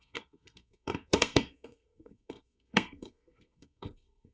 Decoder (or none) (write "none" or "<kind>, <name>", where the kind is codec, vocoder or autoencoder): codec, SNAC